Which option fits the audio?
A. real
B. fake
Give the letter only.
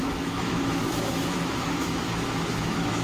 B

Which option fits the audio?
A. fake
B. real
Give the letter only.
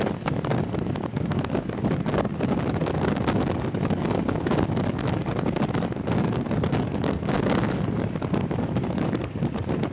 A